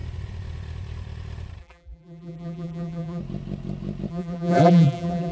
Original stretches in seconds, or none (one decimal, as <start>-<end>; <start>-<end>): 0.0-1.6; 3.2-4.1